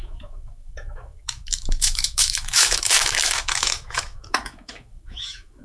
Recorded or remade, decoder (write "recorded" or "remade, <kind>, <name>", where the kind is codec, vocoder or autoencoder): remade, autoencoder, DAC-VAE